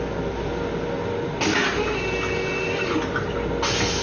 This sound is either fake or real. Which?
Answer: real